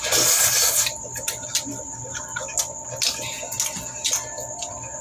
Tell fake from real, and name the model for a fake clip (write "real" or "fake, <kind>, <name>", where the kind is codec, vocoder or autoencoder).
real